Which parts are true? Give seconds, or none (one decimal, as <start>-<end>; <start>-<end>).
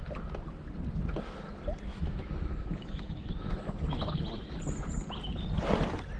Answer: 0.0-1.9; 4.0-6.2